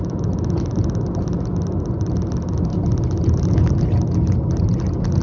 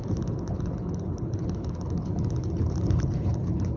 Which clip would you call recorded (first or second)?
first